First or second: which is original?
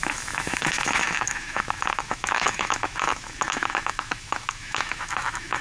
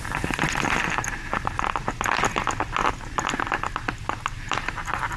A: second